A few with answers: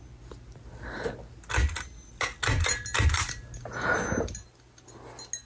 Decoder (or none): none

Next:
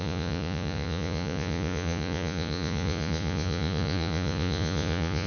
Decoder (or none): vocoder, Vocos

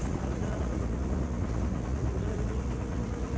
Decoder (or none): vocoder, Vocos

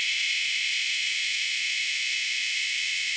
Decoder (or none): vocoder, Vocos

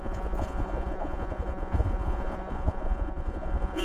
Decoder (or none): vocoder, Vocos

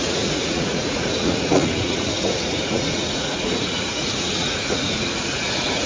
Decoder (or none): vocoder, Vocos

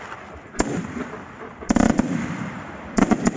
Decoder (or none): none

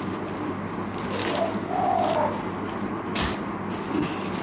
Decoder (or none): none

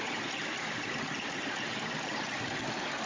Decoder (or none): none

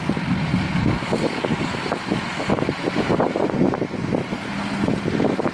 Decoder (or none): none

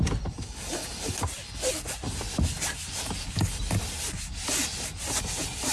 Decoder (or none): none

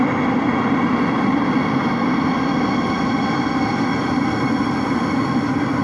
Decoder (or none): none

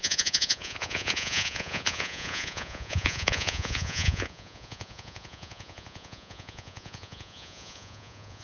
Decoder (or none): vocoder, Vocos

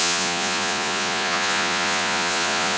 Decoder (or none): vocoder, Vocos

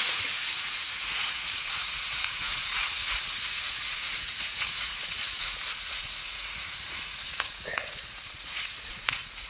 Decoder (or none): vocoder, Vocos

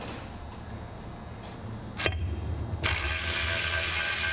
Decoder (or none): none